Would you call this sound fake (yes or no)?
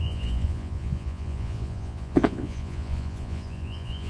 yes